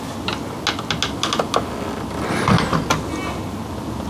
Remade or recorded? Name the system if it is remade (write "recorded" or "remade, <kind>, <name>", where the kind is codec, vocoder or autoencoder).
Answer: recorded